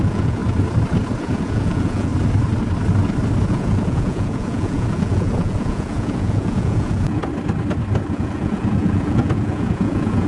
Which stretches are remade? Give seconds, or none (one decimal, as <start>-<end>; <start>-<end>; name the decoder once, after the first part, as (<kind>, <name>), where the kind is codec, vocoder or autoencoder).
0.0-0.4 (vocoder, Vocos); 1.2-2.1; 3.5-7.2; 8.1-10.3